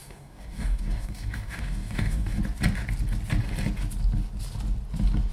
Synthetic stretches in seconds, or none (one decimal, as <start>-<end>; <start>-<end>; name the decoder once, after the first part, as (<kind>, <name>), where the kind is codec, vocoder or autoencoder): 0.0-2.4 (codec, DAC)